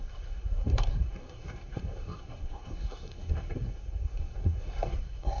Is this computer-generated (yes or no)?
yes